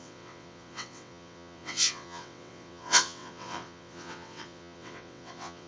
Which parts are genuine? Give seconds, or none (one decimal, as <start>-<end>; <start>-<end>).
none